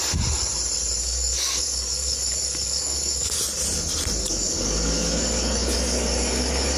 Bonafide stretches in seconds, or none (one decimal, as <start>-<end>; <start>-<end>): 0.0-1.0; 3.4-4.2